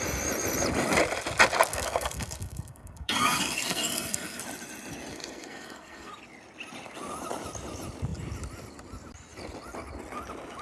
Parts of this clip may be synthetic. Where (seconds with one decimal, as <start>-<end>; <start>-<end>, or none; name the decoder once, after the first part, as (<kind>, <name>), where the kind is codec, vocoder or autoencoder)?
1.7-4.4 (codec, SNAC); 5.1-6.1